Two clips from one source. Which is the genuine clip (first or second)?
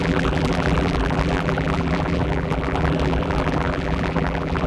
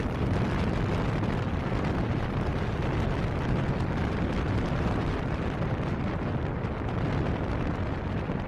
second